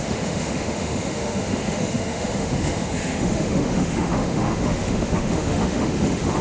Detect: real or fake fake